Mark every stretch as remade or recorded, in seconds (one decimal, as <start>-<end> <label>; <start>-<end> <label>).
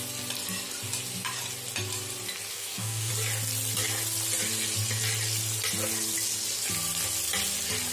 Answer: 0.0-2.5 recorded; 2.5-3.1 remade; 3.1-7.9 recorded